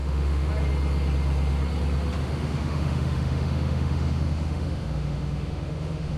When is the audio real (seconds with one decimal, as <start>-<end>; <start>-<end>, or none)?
0.5-2.2